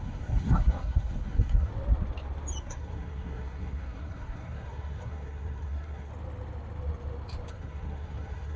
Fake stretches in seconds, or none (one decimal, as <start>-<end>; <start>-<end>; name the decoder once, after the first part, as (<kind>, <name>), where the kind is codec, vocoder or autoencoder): 0.0-1.7 (codec, SNAC); 2.6-6.1; 7.5-8.6

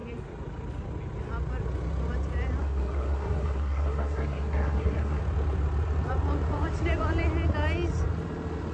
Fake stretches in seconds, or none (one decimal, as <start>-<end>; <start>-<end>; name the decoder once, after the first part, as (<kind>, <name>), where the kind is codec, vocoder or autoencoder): 2.6-5.2 (codec, SNAC)

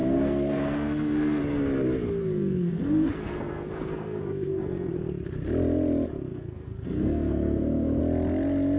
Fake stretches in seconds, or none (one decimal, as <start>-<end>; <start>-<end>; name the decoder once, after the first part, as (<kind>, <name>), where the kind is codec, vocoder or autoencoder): 0.0-1.4 (codec, SNAC); 2.2-4.9; 6.3-8.0

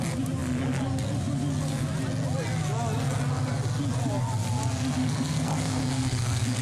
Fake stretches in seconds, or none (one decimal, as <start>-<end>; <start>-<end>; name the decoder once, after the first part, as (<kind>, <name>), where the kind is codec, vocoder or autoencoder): 5.0-6.6 (codec, SNAC)

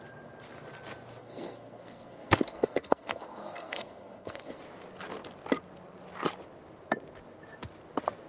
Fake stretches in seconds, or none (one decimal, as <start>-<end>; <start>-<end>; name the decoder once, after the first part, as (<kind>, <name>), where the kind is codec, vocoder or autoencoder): 1.2-4.6 (codec, SNAC)

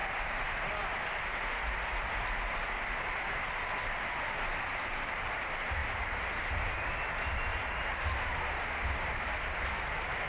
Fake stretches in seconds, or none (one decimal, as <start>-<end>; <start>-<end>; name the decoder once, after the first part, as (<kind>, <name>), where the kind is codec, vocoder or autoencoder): none

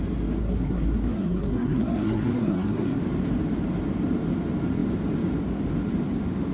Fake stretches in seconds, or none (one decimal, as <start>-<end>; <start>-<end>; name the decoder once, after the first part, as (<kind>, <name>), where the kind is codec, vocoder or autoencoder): 0.4-3.0 (codec, SNAC)

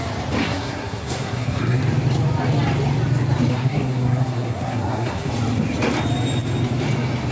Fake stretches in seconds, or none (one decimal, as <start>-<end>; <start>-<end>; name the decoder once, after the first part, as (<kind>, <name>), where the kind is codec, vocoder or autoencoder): 0.4-1.8 (codec, SNAC); 3.5-5.3